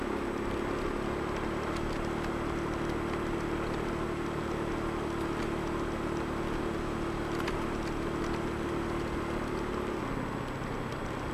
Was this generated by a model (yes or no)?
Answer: no